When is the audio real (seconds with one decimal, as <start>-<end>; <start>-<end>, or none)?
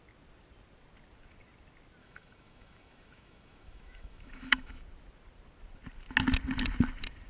0.0-2.0; 4.8-7.3